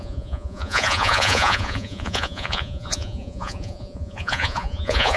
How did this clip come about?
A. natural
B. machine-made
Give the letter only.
B